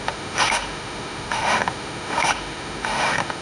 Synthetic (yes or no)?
yes